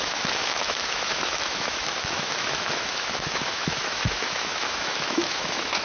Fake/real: fake